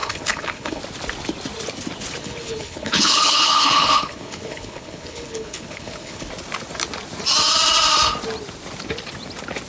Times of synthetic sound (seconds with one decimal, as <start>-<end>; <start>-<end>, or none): 0.0-0.8; 2.2-6.3